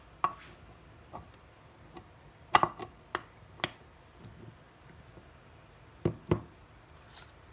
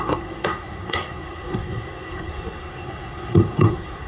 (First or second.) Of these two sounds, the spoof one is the second